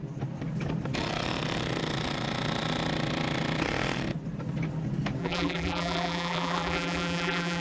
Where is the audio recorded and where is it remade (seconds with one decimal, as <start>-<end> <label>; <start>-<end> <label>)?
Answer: 0.0-5.2 recorded; 5.2-7.6 remade